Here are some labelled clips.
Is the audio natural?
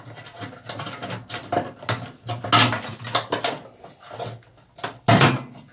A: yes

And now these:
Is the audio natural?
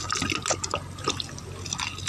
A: yes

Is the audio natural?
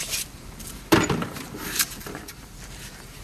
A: no